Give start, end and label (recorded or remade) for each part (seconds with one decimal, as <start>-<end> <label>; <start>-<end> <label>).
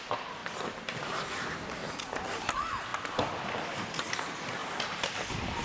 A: 0.0-5.6 recorded